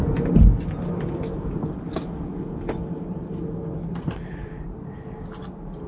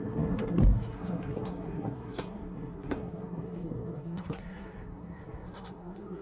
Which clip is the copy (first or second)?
second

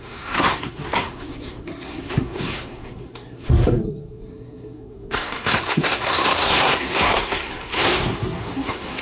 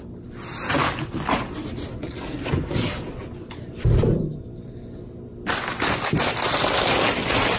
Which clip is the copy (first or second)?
first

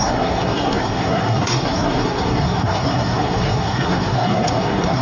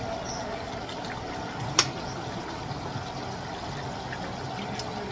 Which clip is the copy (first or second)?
first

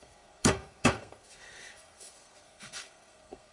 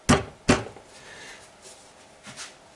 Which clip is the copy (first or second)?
first